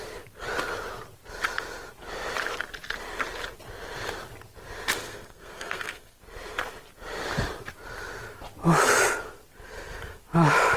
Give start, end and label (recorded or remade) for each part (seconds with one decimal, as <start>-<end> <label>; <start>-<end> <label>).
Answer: 0.0-5.0 recorded; 5.0-6.2 remade; 6.2-10.8 recorded